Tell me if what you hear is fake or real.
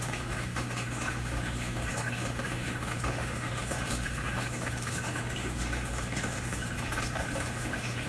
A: fake